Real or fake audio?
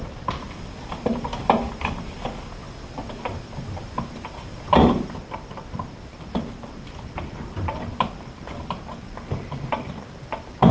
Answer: real